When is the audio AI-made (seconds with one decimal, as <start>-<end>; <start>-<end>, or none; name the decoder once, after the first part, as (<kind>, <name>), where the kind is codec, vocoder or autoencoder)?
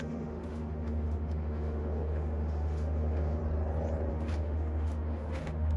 0.0-3.4 (autoencoder, DAC-VAE); 4.1-5.8